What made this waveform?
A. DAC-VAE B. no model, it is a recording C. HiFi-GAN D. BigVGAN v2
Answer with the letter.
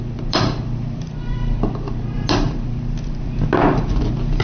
D